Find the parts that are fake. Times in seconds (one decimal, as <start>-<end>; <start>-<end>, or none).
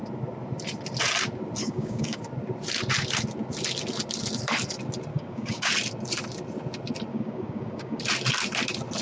1.6-2.2; 5.1-5.7; 7.1-8.0